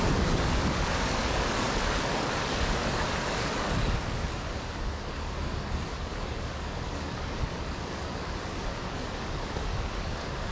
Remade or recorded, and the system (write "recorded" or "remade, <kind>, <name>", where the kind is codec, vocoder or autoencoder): remade, codec, DAC